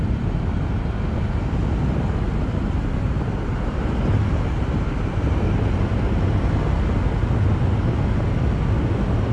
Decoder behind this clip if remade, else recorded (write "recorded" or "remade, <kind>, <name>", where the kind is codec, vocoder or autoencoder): recorded